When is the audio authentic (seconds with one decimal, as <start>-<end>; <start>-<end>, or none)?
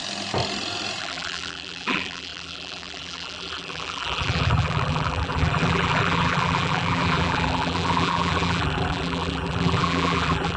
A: 0.0-1.0